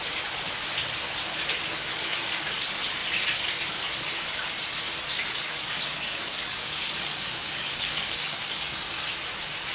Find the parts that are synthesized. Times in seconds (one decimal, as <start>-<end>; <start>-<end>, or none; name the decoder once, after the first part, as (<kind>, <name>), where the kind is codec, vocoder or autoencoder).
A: 1.9-2.6 (codec, DAC); 5.1-9.1